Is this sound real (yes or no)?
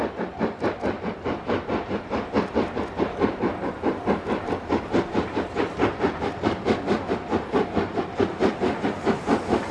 yes